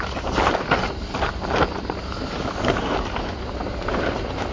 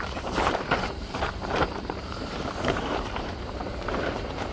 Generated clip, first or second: second